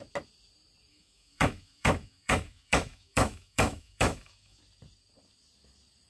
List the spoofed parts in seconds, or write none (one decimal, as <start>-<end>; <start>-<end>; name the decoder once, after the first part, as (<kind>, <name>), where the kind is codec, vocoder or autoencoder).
0.9-4.6 (autoencoder, DAC-VAE)